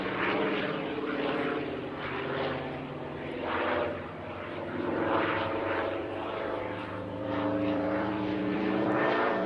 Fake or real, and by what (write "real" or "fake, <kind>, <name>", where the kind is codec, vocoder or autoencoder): fake, vocoder, BigVGAN v2